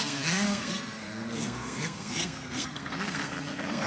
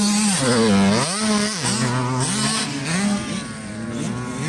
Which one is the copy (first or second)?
first